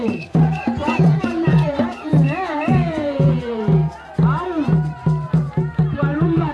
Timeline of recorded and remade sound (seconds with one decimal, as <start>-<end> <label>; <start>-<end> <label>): 0.0-3.9 remade; 3.9-5.4 recorded; 5.4-6.5 remade